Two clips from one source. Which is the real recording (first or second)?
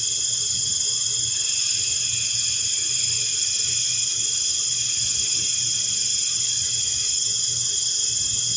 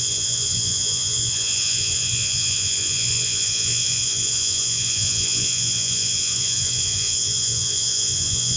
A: first